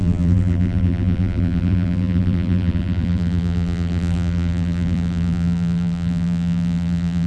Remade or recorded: remade